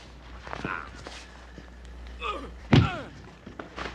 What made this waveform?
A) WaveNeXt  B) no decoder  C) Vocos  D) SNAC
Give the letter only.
B